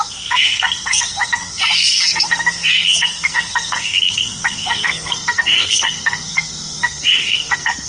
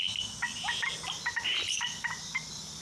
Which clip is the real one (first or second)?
second